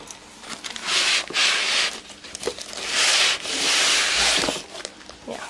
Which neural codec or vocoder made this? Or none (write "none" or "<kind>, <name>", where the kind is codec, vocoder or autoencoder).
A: none